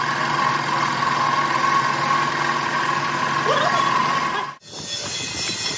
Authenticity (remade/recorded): recorded